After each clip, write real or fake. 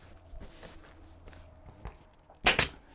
real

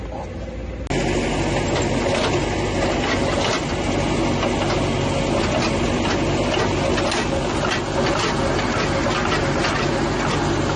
real